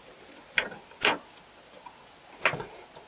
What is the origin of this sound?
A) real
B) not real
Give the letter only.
A